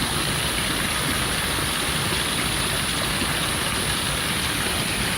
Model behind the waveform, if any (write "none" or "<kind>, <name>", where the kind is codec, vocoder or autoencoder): none